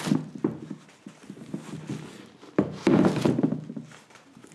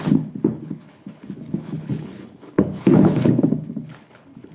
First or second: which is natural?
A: first